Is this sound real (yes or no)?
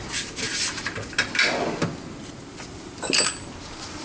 yes